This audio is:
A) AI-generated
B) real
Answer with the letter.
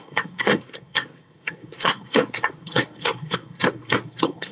A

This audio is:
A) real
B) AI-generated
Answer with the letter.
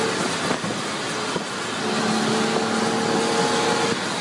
A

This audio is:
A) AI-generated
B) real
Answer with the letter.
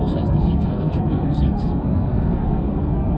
A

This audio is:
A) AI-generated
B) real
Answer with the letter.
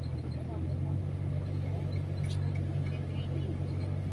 B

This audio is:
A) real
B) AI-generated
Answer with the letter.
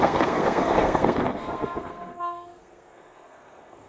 B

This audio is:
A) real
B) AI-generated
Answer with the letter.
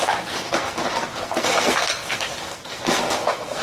B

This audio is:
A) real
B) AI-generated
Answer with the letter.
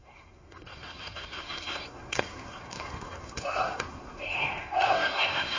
B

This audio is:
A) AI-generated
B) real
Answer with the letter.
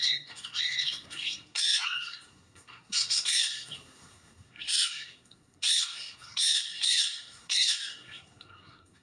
A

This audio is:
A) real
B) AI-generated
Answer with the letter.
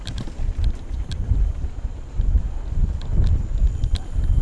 A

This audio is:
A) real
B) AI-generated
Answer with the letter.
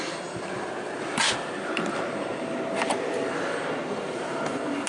A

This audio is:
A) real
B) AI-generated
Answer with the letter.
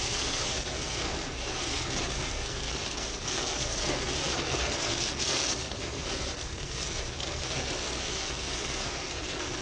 B